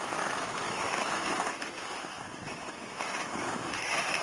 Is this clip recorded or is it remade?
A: remade